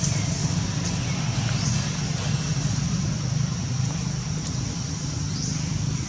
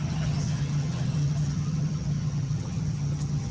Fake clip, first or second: second